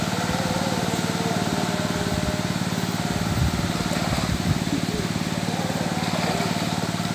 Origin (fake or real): real